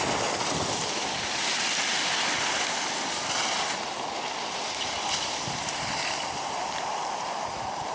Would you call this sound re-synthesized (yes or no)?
no